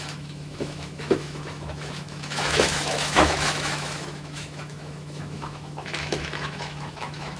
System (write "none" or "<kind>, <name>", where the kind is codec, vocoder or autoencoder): autoencoder, DAC-VAE